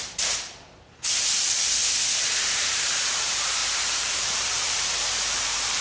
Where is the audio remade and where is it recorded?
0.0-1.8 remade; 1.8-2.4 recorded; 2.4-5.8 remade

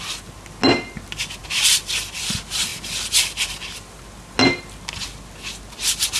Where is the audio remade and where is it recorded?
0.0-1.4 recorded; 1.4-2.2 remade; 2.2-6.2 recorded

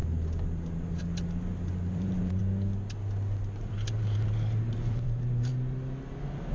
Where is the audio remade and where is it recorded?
0.0-1.0 recorded; 1.0-2.4 remade; 2.4-3.6 recorded; 3.6-5.5 remade; 5.5-6.5 recorded